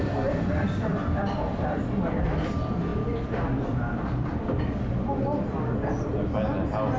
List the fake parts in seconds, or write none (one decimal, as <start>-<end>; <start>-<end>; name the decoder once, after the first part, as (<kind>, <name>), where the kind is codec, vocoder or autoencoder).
0.9-1.8 (vocoder, BigVGAN v2); 2.9-5.2